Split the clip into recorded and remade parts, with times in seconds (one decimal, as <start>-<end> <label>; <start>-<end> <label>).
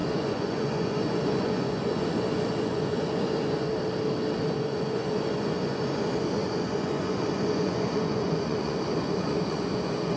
0.0-3.7 remade; 3.7-4.4 recorded; 4.4-10.2 remade